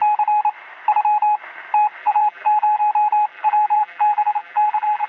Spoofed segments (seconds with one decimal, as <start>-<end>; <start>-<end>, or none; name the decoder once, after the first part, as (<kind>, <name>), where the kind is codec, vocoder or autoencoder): 2.0-2.8 (vocoder, BigVGAN v2); 3.3-5.1